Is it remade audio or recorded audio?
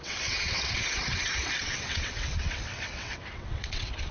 remade